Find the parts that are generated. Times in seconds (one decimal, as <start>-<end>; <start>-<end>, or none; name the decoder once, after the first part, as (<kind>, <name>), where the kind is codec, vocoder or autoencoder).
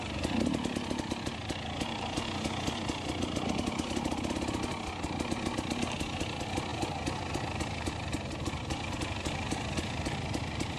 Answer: none